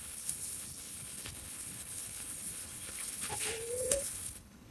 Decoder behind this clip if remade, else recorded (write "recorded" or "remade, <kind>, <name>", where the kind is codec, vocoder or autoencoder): remade, codec, HILCodec